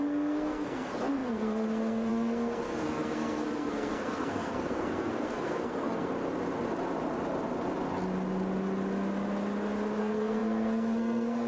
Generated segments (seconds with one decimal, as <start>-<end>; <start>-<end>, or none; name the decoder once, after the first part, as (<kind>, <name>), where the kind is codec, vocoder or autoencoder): 0.0-6.1 (codec, SNAC); 10.0-11.5